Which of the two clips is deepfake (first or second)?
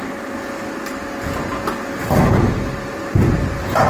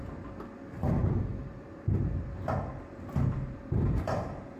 second